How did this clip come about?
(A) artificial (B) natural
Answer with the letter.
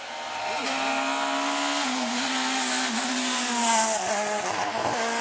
B